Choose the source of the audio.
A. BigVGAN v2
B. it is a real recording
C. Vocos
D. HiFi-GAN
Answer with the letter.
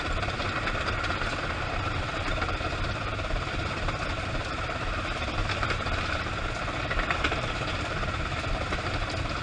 A